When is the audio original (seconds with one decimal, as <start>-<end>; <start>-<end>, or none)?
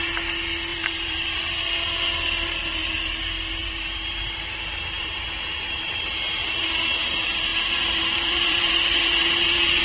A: 0.0-0.7; 1.6-3.6; 6.1-7.5